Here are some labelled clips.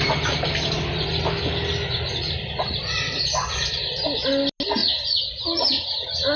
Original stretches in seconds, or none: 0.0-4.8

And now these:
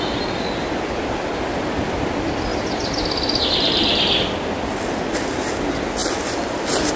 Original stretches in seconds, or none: 0.0-2.5; 4.2-7.0

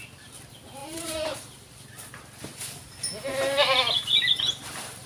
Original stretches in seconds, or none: 0.0-0.8; 1.7-3.3

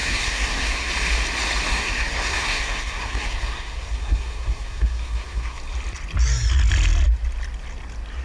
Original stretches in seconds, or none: 0.9-1.7; 5.6-8.2

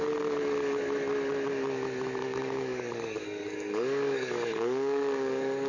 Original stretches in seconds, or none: 0.0-2.2